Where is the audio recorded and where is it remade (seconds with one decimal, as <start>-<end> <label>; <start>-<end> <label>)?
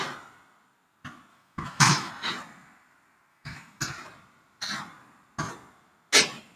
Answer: 0.0-1.3 recorded; 1.3-2.1 remade; 2.1-3.3 recorded; 3.3-3.8 remade; 3.8-6.6 recorded